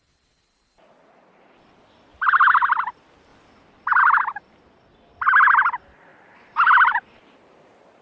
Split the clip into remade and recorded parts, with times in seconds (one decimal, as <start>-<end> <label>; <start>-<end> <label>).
0.0-2.1 recorded; 2.1-2.9 remade; 2.9-3.3 recorded; 3.3-4.0 remade; 4.0-6.1 recorded; 6.1-7.5 remade; 7.5-8.0 recorded